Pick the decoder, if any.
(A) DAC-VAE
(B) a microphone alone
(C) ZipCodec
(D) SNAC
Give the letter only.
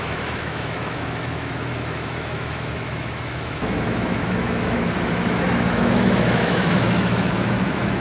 A